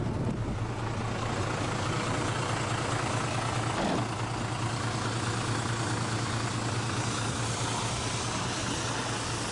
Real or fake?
real